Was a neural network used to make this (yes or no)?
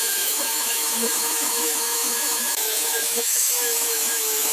yes